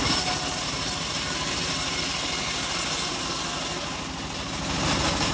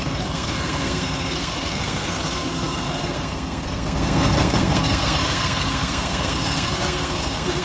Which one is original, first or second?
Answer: first